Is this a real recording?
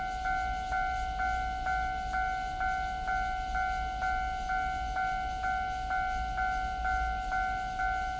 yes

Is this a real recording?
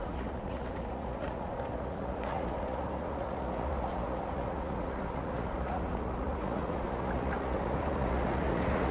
no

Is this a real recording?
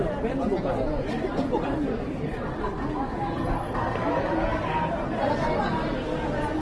yes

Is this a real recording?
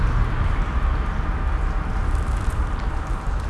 yes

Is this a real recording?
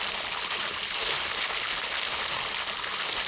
yes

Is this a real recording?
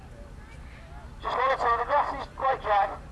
yes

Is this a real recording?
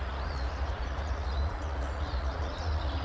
no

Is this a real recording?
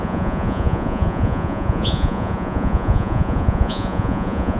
no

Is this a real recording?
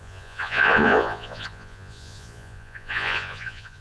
no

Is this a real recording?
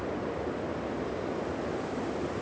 yes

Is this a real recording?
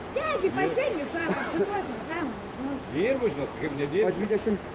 no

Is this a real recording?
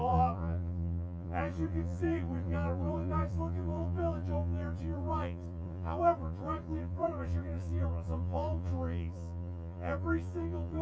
no